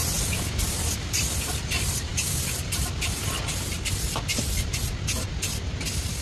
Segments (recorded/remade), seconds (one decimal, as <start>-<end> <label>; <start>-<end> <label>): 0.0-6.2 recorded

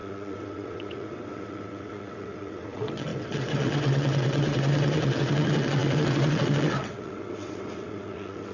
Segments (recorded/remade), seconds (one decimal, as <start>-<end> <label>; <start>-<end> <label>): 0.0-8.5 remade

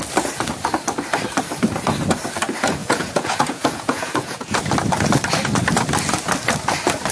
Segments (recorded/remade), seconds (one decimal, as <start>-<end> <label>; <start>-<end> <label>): 0.0-2.8 recorded; 2.8-4.6 remade; 4.6-7.1 recorded

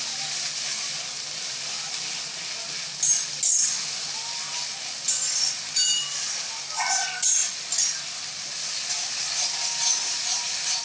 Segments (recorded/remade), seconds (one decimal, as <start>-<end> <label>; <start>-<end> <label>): 0.0-10.8 recorded

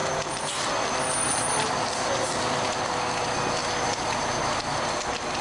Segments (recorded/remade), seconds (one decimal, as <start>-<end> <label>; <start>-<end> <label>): 0.0-5.4 recorded

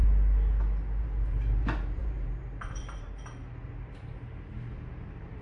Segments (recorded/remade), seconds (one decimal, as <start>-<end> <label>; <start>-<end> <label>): 0.0-1.0 recorded; 1.0-5.4 remade